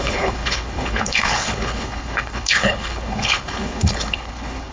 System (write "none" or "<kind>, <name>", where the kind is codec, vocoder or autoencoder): codec, HILCodec